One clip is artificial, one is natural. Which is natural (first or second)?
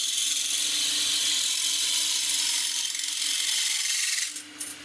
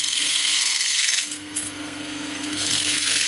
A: first